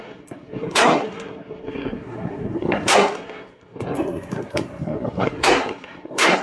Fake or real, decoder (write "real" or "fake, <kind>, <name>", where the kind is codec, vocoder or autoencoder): fake, codec, SNAC